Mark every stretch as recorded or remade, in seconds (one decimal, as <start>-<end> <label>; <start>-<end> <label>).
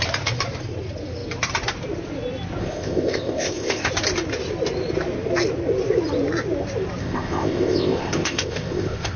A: 0.0-2.6 recorded; 2.6-3.9 remade; 3.9-7.0 recorded; 7.0-9.2 remade